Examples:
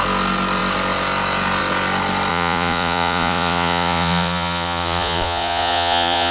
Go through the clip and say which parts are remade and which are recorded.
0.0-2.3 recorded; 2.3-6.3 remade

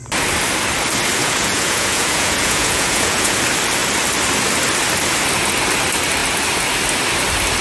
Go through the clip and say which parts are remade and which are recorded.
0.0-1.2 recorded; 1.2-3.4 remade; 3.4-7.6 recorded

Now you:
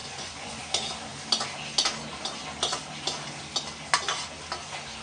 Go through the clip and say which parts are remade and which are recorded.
0.0-0.6 remade; 0.6-5.0 recorded